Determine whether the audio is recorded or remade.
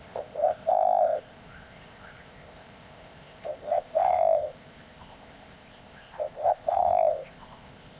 remade